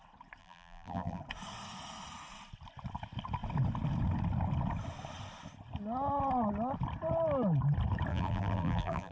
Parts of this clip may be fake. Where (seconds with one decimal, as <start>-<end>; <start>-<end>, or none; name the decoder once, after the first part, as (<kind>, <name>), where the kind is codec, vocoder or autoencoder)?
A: 0.4-1.2 (vocoder, BigVGAN v2); 8.1-9.1